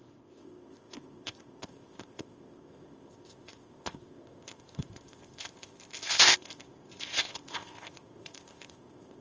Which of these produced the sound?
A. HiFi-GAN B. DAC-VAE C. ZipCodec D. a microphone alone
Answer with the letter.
C